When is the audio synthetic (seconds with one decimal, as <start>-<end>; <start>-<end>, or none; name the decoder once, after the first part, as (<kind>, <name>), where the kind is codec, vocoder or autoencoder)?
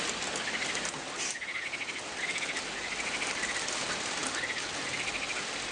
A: none